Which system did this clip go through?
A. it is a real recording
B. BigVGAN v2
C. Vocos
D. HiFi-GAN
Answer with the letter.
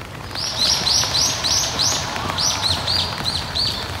B